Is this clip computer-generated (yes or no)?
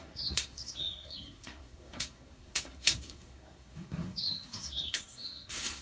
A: yes